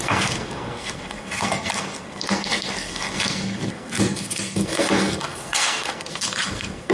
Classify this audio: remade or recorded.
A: remade